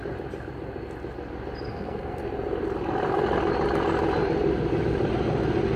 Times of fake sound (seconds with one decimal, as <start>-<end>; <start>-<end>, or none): 1.7-2.2